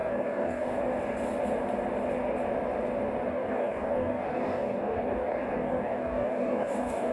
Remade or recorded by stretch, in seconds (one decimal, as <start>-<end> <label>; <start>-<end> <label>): 0.0-0.8 remade; 0.8-3.3 recorded; 3.3-7.1 remade